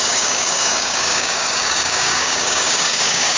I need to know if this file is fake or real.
fake